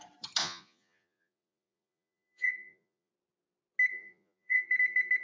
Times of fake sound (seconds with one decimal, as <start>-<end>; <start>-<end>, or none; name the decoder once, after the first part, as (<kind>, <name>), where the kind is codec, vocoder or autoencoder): 0.4-3.1 (vocoder, Vocos); 3.9-4.6